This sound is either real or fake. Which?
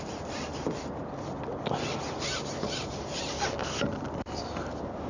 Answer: real